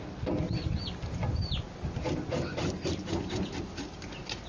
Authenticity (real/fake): real